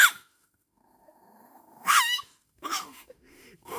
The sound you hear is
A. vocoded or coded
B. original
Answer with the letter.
A